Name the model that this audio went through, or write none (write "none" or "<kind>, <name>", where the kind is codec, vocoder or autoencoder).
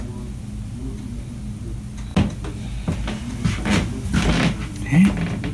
none